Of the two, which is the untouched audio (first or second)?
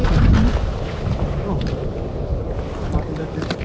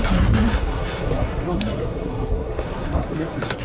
first